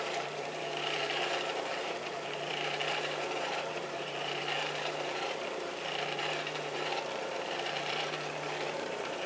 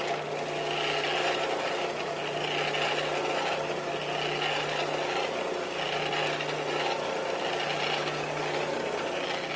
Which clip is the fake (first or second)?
first